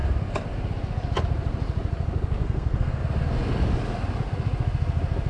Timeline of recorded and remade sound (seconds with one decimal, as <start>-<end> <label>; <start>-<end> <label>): 0.0-2.4 recorded; 2.4-3.0 remade; 3.0-5.3 recorded